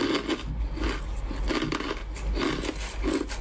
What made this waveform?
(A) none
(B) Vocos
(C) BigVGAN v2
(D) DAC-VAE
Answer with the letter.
A